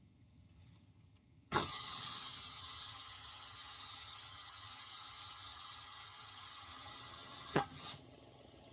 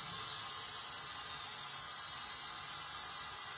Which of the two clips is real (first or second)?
second